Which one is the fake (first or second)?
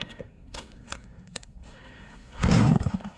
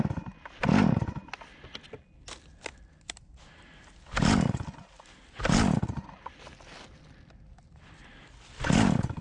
first